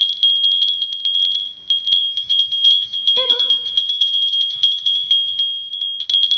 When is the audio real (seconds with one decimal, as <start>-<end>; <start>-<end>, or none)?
0.0-2.0; 5.7-6.4